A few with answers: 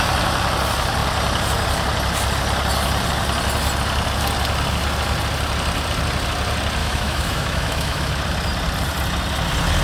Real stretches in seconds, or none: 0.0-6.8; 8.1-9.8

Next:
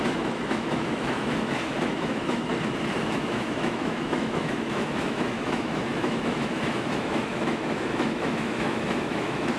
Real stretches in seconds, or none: 2.5-3.0

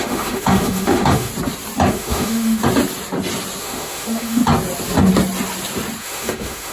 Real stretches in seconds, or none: 1.3-1.9; 2.6-3.6; 4.4-6.0

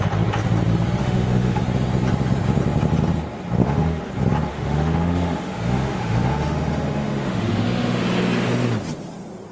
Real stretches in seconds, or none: 0.0-1.0; 1.6-3.6; 4.1-4.5; 8.0-9.5

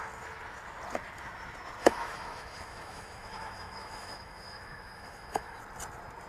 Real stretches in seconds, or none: 0.0-1.8; 5.6-6.3

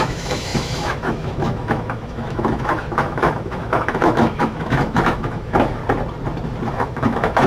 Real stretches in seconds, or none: 5.8-6.7

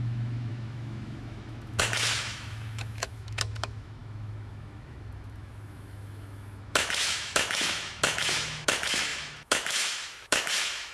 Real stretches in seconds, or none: none